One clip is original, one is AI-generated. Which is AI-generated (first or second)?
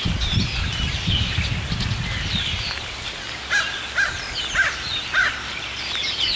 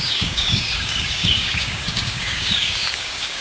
second